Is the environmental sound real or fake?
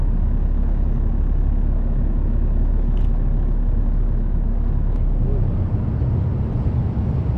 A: real